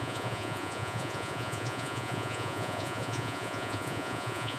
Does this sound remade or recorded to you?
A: remade